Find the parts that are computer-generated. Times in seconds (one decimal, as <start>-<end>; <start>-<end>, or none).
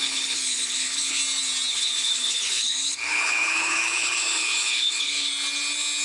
0.0-1.2; 1.7-5.3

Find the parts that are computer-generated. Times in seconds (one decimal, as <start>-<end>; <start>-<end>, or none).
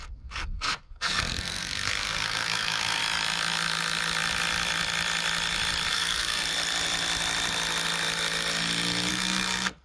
0.0-3.0; 5.9-6.4; 9.1-9.8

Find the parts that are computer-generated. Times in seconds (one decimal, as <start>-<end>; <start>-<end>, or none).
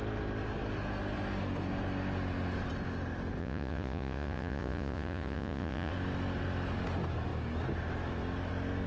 3.4-5.9